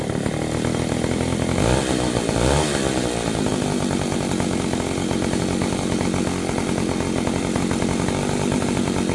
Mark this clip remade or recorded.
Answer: recorded